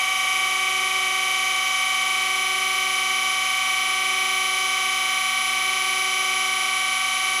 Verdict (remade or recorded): recorded